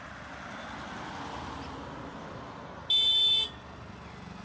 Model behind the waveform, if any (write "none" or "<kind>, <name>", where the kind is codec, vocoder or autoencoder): none